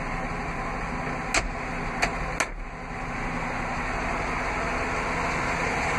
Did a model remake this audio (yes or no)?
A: no